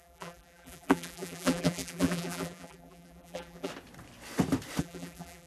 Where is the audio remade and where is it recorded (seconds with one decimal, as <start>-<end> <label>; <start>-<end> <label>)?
0.0-3.7 remade; 3.7-4.8 recorded; 4.8-5.5 remade